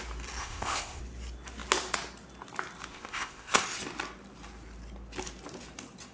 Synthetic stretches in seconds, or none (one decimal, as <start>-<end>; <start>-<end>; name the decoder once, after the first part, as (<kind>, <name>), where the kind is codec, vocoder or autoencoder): 0.4-1.0 (codec, ZipCodec); 2.9-3.6